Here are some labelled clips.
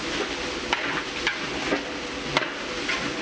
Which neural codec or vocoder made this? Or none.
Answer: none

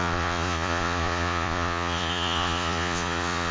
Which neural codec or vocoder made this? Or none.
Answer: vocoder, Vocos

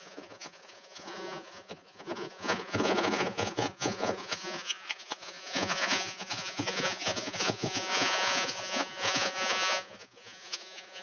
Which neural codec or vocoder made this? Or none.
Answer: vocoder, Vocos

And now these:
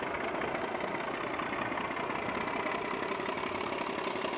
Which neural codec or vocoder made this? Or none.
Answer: none